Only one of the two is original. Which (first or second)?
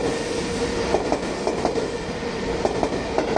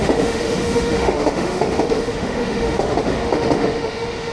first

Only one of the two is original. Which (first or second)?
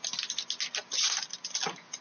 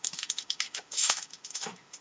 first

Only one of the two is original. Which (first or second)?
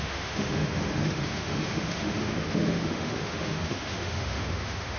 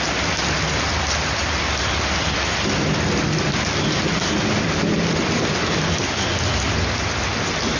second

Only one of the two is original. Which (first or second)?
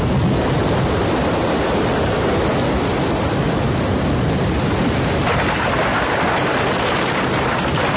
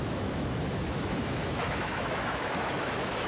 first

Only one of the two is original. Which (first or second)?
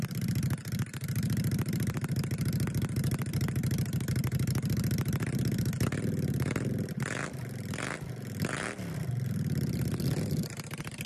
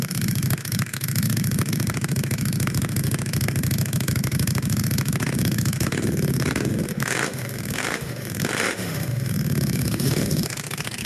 first